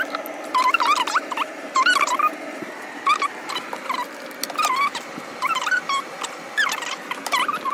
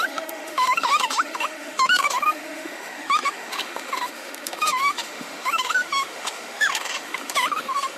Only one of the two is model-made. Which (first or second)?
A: second